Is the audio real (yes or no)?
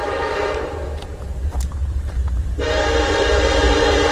no